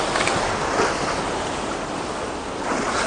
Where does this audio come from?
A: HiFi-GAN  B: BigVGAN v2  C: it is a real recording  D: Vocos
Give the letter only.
C